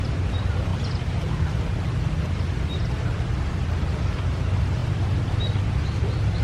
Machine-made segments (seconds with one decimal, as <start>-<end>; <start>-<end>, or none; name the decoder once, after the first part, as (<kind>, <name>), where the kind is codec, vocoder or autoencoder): none

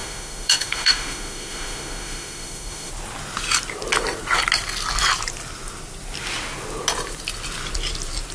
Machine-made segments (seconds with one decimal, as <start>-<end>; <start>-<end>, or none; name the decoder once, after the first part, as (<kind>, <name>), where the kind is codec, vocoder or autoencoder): 0.0-2.9 (autoencoder, DAC-VAE)